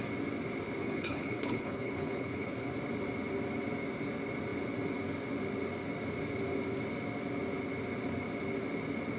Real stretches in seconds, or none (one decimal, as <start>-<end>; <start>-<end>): 0.0-0.8; 2.7-9.2